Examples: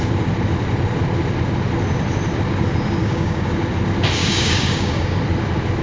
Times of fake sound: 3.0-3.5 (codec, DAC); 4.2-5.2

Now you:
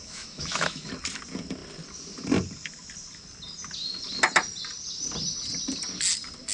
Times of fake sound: 0.0-0.9 (autoencoder, DAC-VAE)

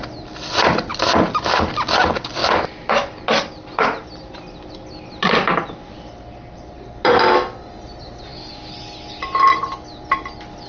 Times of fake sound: none

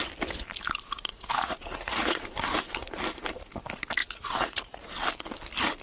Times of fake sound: 1.1-2.2 (vocoder, Vocos); 4.0-4.9

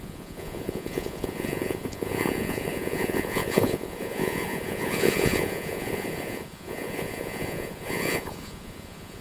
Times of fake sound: 0.0-9.2 (vocoder, Vocos)

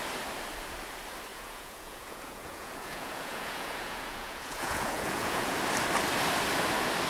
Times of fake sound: 1.3-5.6 (vocoder, Vocos)

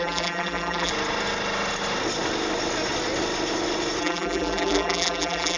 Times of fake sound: 0.0-0.9 (vocoder, BigVGAN v2); 4.0-5.6